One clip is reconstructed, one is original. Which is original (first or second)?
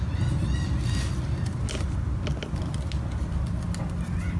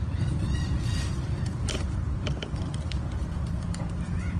first